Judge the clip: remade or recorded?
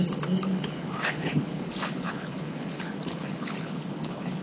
remade